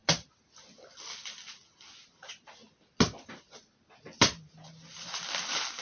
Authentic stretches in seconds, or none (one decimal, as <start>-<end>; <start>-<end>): 0.0-5.8

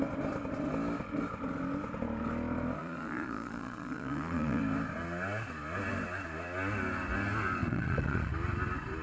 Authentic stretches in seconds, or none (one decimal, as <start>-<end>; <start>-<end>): 0.0-2.8; 4.6-7.6; 8.3-9.0

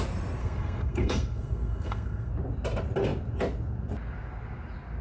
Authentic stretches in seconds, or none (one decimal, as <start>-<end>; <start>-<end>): 0.0-0.4; 2.3-5.0

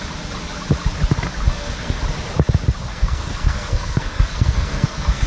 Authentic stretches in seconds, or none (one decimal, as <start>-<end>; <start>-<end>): 0.0-1.5; 2.0-2.9

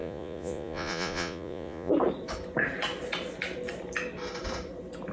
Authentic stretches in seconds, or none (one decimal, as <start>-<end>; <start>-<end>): 1.9-5.1

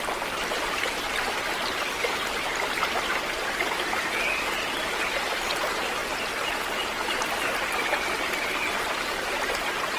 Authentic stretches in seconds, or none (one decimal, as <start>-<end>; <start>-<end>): 0.0-10.0